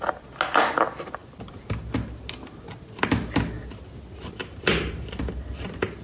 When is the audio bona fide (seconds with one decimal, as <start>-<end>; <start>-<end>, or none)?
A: 0.0-6.0